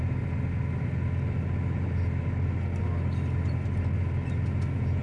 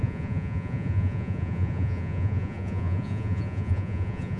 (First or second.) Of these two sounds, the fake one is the second